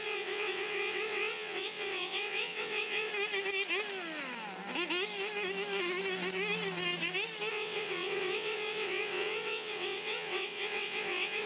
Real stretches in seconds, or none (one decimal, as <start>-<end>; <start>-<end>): 3.1-7.5